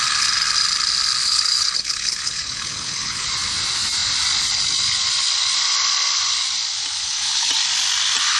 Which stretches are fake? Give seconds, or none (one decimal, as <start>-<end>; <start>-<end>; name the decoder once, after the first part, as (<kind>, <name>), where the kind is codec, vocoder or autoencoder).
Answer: 1.2-3.3 (codec, HILCodec); 7.0-7.5